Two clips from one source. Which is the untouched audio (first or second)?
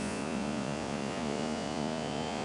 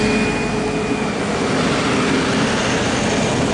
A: second